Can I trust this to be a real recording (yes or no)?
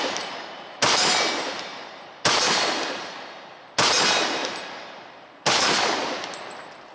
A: yes